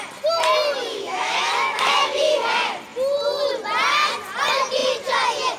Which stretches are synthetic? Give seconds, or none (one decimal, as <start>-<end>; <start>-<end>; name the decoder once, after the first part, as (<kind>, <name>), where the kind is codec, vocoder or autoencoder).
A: 0.9-2.2 (autoencoder, DAC-VAE)